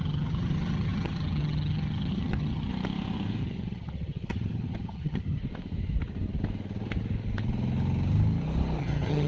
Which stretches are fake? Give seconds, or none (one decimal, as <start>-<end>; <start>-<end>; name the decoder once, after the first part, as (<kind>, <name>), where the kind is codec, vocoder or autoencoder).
0.0-2.7 (vocoder, HiFi-GAN); 3.4-5.4; 8.8-9.3